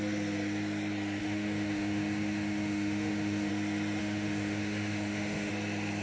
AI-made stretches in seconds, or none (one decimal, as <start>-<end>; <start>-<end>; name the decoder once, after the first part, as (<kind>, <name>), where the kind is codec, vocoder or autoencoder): 1.2-3.5 (autoencoder, DAC-VAE); 4.0-5.5